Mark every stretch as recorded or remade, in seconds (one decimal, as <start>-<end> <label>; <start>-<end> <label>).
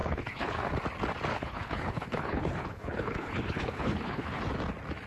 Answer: 0.0-0.7 remade; 0.7-1.3 recorded; 1.3-4.4 remade; 4.4-5.1 recorded